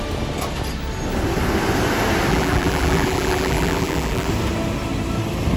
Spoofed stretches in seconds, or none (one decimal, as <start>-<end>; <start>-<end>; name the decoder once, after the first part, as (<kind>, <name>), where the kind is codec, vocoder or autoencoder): 2.3-4.3 (vocoder, BigVGAN v2)